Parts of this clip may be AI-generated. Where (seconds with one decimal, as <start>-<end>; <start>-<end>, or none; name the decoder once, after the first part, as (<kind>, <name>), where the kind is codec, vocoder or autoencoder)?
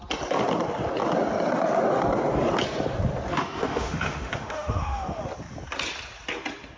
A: 3.3-5.2 (autoencoder, DAC-VAE)